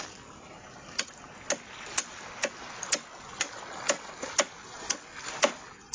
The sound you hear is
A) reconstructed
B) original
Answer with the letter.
B